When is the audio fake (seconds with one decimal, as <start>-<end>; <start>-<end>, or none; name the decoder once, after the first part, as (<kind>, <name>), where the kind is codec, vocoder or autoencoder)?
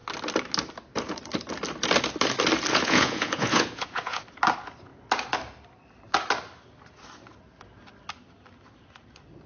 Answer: 2.7-4.2 (vocoder, Vocos)